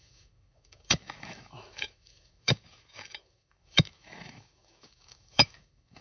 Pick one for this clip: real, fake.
fake